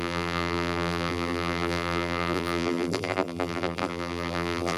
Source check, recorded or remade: remade